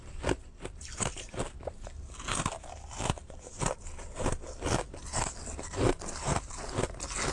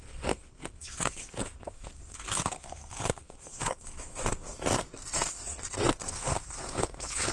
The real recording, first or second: first